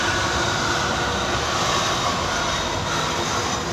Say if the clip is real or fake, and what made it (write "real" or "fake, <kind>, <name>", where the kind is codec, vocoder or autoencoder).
real